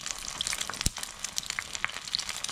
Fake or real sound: real